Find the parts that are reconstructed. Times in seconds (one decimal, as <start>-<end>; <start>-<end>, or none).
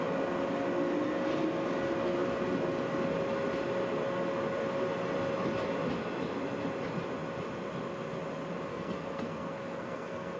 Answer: 8.7-10.4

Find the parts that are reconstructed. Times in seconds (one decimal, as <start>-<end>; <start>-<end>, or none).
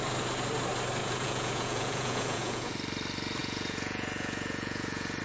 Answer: 1.0-2.7; 3.4-5.2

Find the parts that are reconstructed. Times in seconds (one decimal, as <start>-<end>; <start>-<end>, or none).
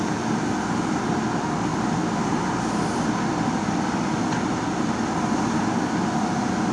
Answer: none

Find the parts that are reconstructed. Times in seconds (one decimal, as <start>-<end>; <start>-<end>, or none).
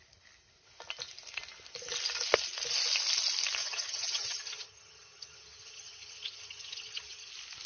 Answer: 3.6-7.3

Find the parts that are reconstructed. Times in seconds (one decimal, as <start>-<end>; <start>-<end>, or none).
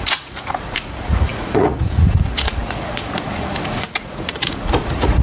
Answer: 0.0-5.2